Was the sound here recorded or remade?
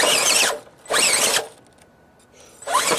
recorded